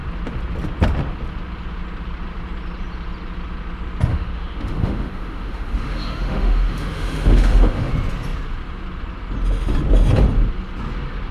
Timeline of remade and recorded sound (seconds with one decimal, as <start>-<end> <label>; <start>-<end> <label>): 0.0-4.1 recorded; 4.1-7.9 remade; 7.9-11.3 recorded